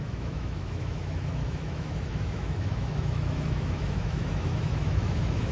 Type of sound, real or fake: fake